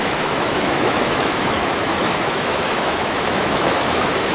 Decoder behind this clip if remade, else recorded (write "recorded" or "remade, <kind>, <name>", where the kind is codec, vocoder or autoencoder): remade, autoencoder, DAC-VAE